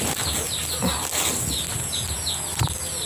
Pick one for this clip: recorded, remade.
recorded